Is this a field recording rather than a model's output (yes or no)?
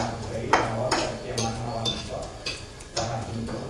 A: no